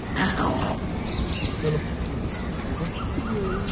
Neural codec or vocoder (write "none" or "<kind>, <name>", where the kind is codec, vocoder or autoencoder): none